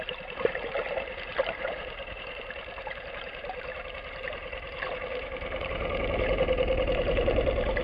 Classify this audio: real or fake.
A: fake